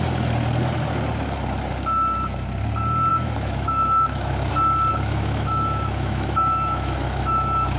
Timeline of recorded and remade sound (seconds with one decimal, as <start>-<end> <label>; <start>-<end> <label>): 0.0-3.1 recorded; 3.1-4.5 remade; 4.5-4.9 recorded; 4.9-7.8 remade